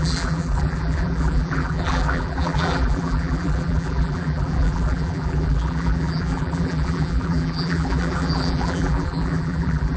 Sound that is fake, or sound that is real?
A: fake